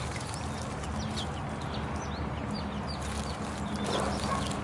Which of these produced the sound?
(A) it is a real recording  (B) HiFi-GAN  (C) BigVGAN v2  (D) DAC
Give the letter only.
A